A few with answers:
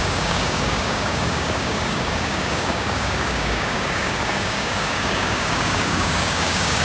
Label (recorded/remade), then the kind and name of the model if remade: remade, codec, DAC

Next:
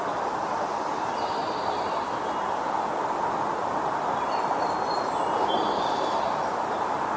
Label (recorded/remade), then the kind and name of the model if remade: recorded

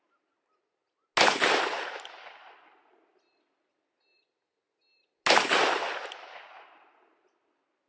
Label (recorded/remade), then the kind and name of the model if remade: recorded